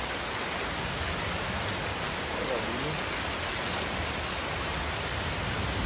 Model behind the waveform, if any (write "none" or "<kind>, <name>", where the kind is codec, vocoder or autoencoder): none